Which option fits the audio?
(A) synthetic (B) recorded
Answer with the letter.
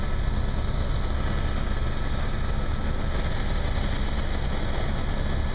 B